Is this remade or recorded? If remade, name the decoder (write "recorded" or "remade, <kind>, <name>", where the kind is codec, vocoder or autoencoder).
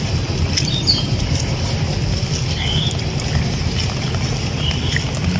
recorded